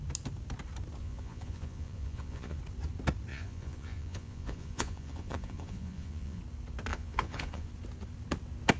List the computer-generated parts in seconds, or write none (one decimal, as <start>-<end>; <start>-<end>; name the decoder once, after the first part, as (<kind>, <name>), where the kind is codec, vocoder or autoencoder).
1.0-2.6 (vocoder, Vocos); 3.3-6.4; 6.9-7.7